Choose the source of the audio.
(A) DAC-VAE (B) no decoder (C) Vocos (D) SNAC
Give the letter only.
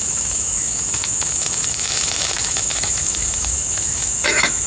A